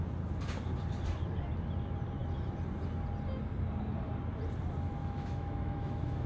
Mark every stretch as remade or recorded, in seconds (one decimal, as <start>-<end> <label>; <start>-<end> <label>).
0.0-5.0 recorded; 5.0-6.3 remade